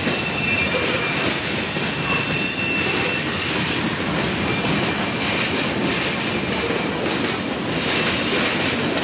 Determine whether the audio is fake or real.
real